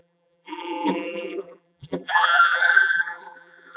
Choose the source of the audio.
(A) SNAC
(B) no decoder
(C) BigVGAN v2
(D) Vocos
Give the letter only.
C